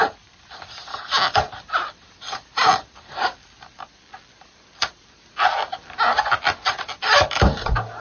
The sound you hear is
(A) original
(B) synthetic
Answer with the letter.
A